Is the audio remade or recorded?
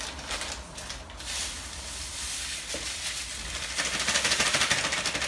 recorded